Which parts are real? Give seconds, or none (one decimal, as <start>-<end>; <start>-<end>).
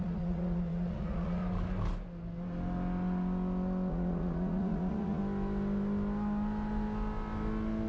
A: 1.4-3.9; 5.2-7.9